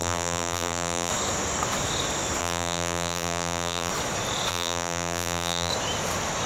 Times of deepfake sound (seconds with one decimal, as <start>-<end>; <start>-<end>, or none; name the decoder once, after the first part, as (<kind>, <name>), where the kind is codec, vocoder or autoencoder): 0.0-1.1 (vocoder, BigVGAN v2); 2.4-3.9; 4.5-5.7